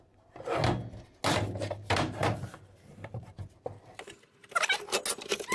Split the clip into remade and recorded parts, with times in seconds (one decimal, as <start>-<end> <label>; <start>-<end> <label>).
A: 0.0-2.5 recorded; 2.5-3.3 remade; 3.3-5.5 recorded